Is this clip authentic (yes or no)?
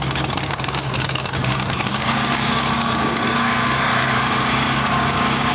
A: no